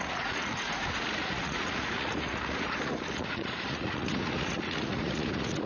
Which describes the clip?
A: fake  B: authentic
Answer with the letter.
A